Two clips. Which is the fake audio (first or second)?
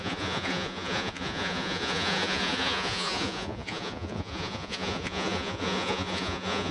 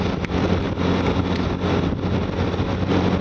first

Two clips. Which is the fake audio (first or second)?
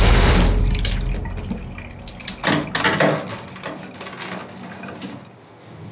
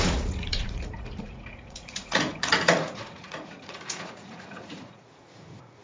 second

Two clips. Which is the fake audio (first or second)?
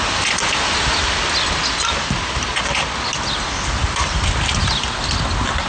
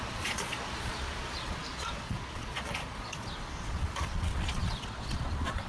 second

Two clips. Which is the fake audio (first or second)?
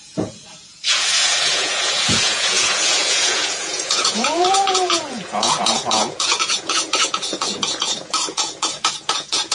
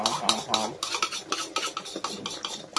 first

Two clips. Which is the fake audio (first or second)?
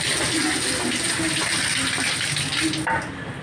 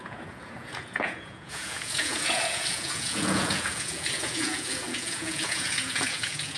second